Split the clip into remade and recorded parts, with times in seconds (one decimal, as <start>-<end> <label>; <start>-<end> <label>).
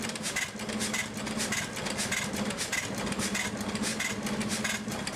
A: 0.0-5.2 recorded